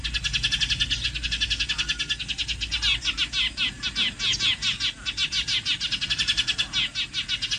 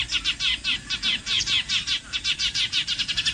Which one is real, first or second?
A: first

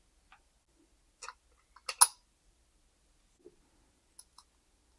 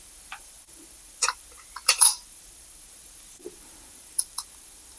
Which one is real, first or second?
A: first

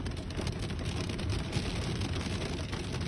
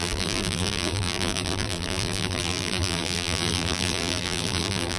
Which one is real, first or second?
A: first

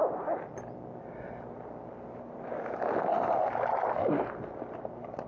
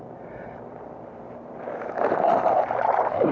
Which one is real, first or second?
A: first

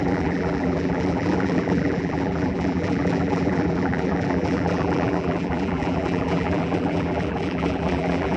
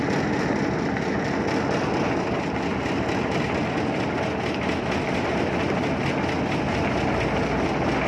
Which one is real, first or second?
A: second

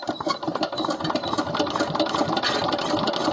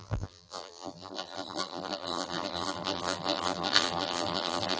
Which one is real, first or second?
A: first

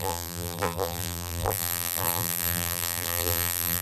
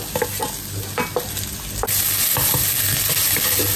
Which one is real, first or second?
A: second